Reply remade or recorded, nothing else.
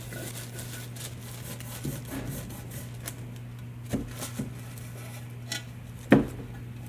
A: recorded